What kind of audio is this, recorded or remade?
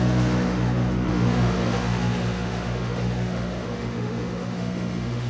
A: remade